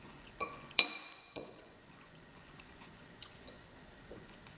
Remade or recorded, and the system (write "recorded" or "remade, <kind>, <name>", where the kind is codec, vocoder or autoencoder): remade, vocoder, Vocos